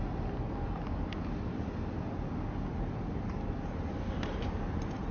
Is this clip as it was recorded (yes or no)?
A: yes